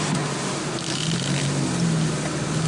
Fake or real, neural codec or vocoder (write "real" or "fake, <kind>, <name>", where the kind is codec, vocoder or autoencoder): real